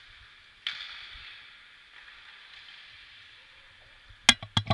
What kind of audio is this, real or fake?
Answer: real